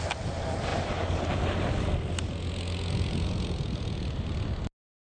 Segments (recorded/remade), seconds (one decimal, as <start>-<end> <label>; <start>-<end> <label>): 0.0-5.1 recorded